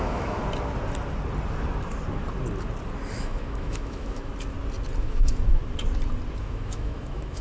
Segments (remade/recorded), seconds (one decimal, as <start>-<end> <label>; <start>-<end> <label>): 0.0-0.4 remade; 0.4-3.1 recorded; 3.1-4.3 remade; 4.3-5.0 recorded; 5.0-5.6 remade; 5.6-6.4 recorded; 6.4-7.4 remade